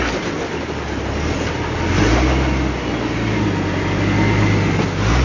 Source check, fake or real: real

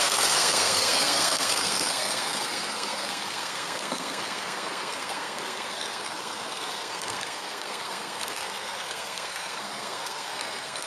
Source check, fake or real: fake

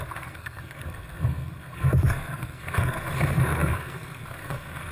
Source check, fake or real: fake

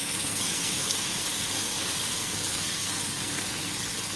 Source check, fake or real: fake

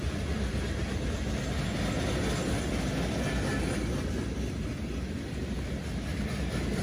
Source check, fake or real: real